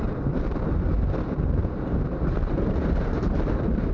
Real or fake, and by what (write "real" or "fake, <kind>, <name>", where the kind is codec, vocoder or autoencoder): fake, vocoder, BigVGAN v2